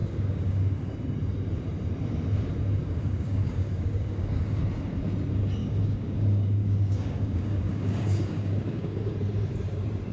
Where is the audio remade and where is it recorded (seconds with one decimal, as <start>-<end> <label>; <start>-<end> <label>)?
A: 0.0-0.9 remade; 0.9-2.8 recorded; 2.8-4.6 remade; 4.6-5.6 recorded; 5.6-9.1 remade; 9.1-10.1 recorded